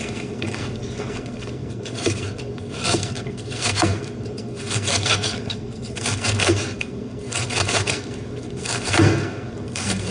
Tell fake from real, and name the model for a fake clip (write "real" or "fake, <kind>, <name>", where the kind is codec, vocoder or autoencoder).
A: fake, codec, SNAC